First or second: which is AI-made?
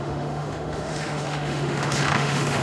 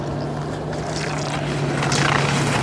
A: first